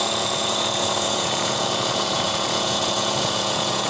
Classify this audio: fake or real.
fake